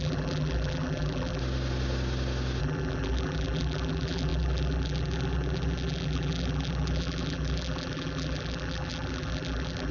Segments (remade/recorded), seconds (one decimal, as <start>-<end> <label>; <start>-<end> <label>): 0.0-1.4 remade; 1.4-2.6 recorded; 2.6-9.9 remade